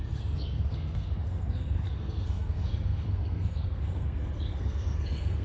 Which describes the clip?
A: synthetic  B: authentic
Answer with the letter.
A